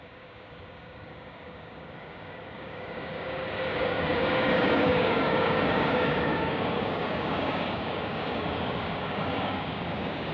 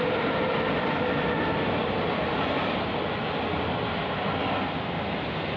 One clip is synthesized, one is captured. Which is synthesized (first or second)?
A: first